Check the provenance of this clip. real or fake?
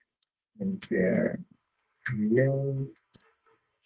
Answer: fake